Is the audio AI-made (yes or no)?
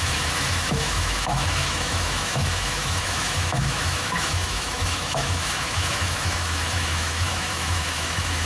yes